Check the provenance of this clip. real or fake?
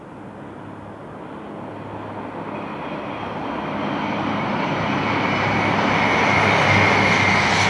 real